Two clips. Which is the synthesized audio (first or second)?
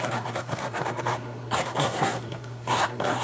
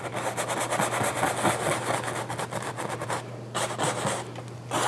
first